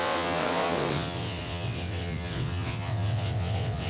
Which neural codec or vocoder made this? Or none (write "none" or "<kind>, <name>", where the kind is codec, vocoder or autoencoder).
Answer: vocoder, WaveNeXt